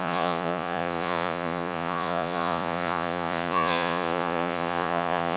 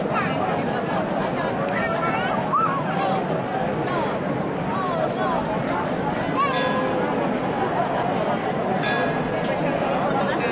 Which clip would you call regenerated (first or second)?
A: first